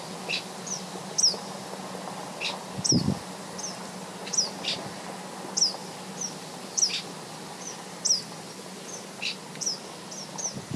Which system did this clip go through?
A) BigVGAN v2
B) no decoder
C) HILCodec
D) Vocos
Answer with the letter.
B